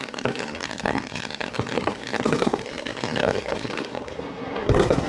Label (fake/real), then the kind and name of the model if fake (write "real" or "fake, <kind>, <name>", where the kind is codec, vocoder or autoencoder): fake, codec, SNAC